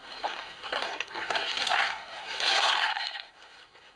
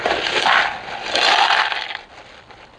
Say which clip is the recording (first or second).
second